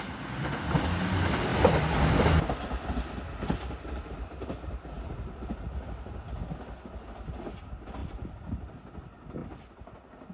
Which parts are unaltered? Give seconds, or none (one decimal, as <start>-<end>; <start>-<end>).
0.0-8.0; 8.5-10.3